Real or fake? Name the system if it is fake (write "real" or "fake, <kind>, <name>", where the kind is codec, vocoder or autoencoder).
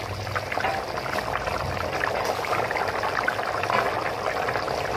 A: real